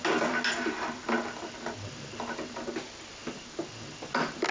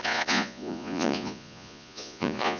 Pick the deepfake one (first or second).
second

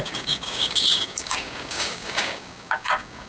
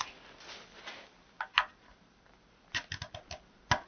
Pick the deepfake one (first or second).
first